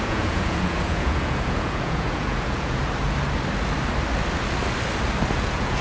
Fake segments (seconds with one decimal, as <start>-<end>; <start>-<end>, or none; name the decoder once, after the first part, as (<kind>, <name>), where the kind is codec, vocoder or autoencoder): 0.0-2.8 (vocoder, Vocos); 5.3-5.8